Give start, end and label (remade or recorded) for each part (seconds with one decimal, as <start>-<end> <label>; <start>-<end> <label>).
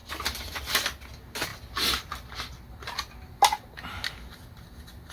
0.0-0.6 remade; 0.6-5.1 recorded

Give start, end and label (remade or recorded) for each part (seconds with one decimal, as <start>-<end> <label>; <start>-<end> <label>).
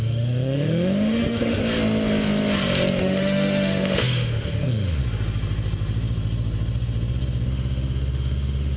0.0-1.6 remade; 1.6-3.0 recorded; 3.0-5.0 remade; 5.0-7.5 recorded; 7.5-8.8 remade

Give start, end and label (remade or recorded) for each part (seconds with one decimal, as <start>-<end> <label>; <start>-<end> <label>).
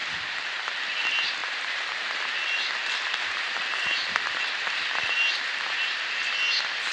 0.0-0.8 remade; 0.8-1.4 recorded; 1.4-2.4 remade; 2.4-2.8 recorded; 2.8-6.2 remade; 6.2-6.9 recorded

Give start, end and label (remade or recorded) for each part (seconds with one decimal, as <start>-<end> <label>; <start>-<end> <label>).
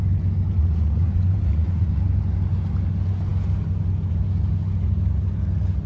0.0-0.6 recorded; 0.6-1.9 remade; 1.9-5.9 recorded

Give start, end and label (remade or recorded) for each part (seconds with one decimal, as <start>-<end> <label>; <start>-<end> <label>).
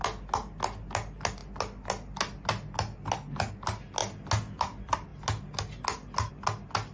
0.0-6.9 recorded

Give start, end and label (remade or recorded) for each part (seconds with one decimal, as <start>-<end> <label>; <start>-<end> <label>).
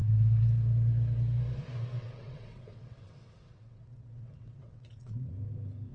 0.0-1.9 recorded; 1.9-5.4 remade; 5.4-5.9 recorded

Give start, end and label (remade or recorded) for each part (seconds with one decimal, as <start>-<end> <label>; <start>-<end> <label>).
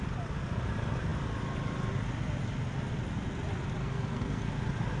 0.0-3.8 recorded; 3.8-4.5 remade; 4.5-5.0 recorded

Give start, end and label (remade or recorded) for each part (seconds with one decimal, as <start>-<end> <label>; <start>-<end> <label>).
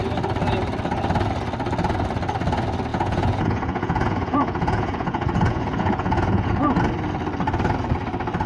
0.0-2.9 recorded; 2.9-6.8 remade; 6.8-8.5 recorded